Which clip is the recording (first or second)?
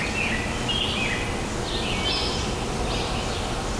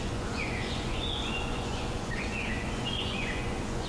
first